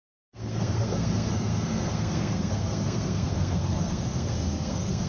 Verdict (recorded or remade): remade